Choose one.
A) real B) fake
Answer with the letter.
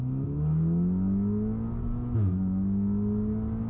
A